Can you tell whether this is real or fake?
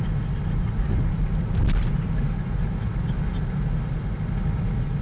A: real